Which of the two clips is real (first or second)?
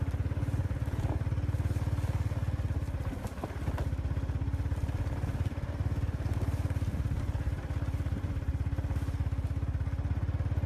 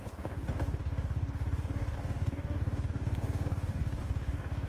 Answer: first